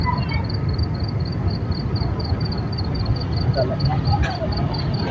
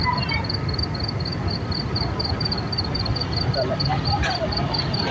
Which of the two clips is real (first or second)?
first